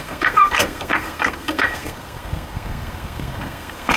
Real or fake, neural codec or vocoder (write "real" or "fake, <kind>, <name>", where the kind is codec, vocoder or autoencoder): fake, codec, SNAC